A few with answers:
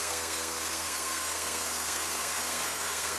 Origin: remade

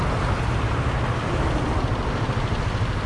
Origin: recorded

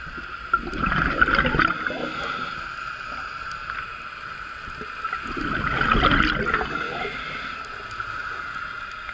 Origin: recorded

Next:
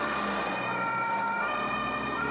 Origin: recorded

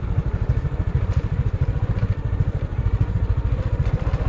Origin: recorded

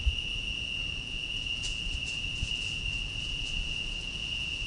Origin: remade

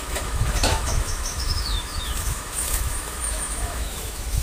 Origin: remade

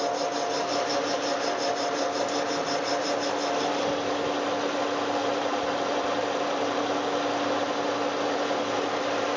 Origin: recorded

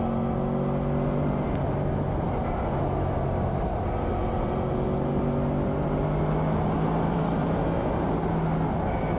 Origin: recorded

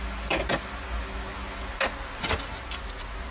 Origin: recorded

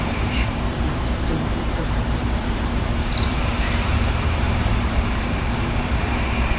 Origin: remade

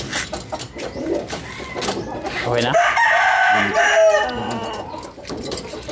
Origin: recorded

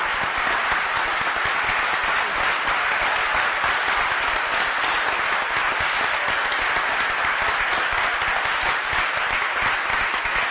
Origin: recorded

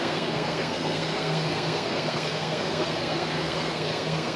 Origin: remade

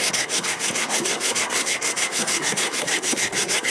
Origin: remade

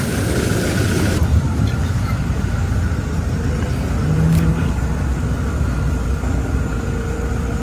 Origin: recorded